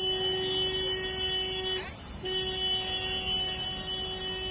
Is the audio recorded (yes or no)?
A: yes